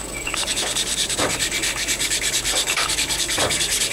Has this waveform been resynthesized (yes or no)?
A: yes